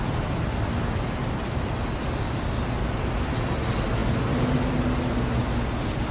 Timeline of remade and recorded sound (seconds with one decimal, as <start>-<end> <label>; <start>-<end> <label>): 0.0-6.1 recorded